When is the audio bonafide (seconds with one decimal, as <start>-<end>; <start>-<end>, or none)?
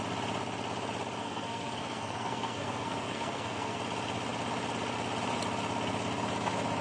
0.0-1.2; 3.8-6.8